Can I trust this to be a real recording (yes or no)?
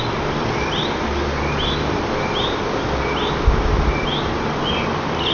yes